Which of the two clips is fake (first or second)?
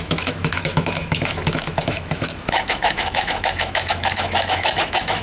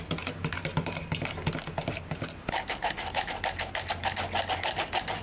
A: first